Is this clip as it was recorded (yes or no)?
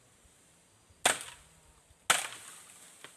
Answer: yes